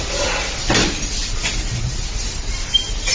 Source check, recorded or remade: recorded